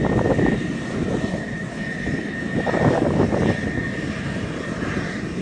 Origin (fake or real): real